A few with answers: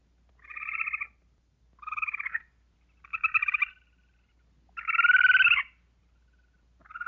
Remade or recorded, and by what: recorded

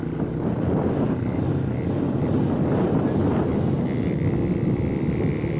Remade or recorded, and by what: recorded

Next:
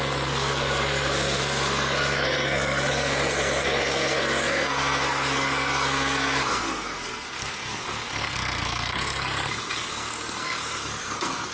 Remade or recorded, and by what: remade, codec, SNAC